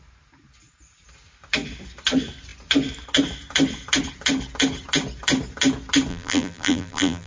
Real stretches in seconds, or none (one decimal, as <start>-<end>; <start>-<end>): 0.0-6.1